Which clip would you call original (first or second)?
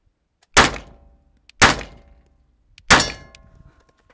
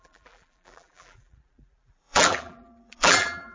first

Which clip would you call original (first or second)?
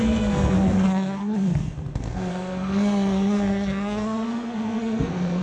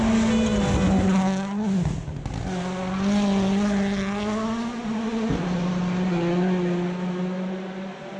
second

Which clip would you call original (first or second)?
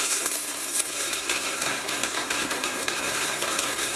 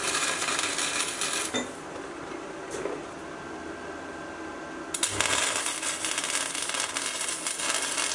second